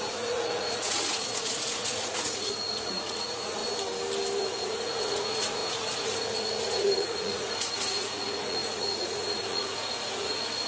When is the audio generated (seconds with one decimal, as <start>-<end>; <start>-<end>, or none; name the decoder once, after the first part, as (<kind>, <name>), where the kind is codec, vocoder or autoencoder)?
0.0-3.6 (vocoder, Vocos); 4.4-10.7